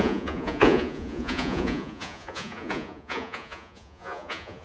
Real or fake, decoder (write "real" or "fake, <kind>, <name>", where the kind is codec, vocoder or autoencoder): fake, vocoder, Vocos